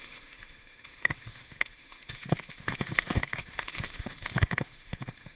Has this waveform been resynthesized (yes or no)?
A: yes